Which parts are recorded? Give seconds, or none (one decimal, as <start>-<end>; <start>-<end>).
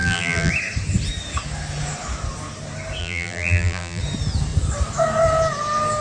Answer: 0.5-3.0; 4.0-6.0